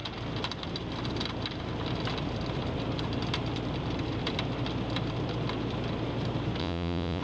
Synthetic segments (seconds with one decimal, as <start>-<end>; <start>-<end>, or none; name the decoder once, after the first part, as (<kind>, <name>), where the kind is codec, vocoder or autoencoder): 6.6-7.2 (vocoder, Vocos)